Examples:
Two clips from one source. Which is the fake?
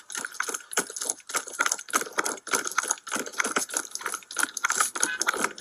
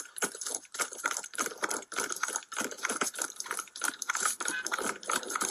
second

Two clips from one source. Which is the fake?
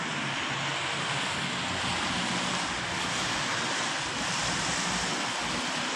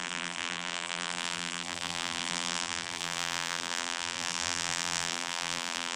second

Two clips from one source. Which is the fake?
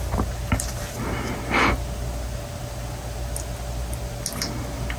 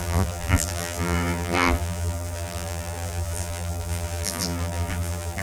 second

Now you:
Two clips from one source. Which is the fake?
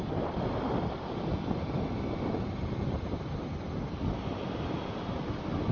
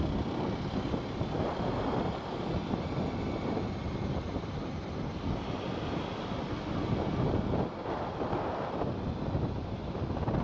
first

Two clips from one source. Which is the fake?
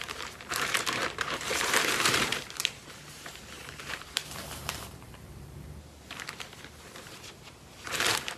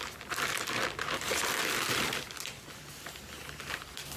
first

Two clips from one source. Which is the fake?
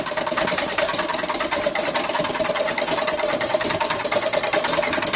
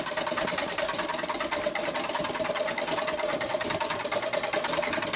first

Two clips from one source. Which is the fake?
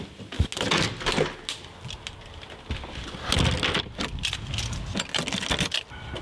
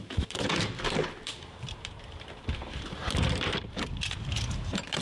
second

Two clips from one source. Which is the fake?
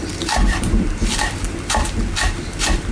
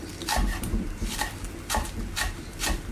first